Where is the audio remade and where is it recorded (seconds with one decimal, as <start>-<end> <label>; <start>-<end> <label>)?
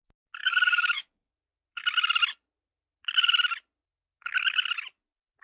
0.0-0.4 recorded; 0.4-1.3 remade; 1.3-5.4 recorded